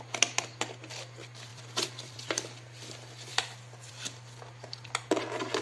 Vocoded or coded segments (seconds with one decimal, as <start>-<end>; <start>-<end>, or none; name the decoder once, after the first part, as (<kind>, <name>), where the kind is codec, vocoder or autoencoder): 1.5-2.3 (vocoder, BigVGAN v2)